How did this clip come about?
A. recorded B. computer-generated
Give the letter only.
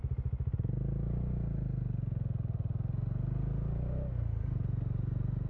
A